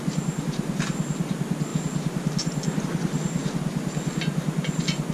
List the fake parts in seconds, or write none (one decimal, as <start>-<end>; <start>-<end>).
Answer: none